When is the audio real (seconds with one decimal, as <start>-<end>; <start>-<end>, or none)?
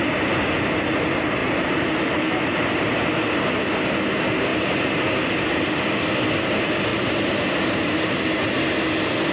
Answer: 0.0-1.4; 2.9-6.9; 7.9-9.3